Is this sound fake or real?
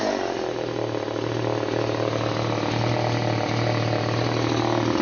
real